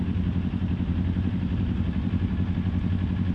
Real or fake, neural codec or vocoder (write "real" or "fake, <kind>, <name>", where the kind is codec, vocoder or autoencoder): real